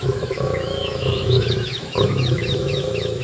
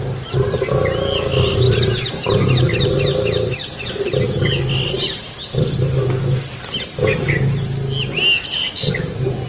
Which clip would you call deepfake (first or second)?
first